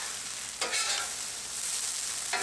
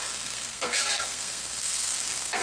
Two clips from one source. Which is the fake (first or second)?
second